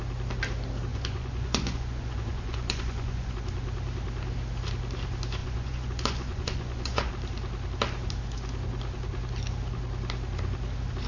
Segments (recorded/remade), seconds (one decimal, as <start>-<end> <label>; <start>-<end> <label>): 0.0-0.9 recorded; 0.9-3.3 remade; 3.3-5.4 recorded; 5.4-7.1 remade; 7.1-11.1 recorded